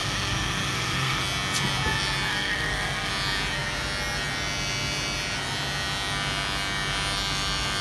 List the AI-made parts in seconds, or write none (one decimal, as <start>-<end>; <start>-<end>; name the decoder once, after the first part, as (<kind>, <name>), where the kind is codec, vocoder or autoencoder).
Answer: 0.0-1.2 (codec, SNAC); 2.3-3.1